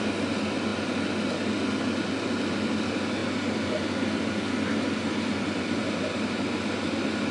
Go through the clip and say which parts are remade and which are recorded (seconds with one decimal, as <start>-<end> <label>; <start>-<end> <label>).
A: 0.0-7.3 recorded